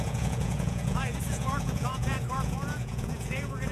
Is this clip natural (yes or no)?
no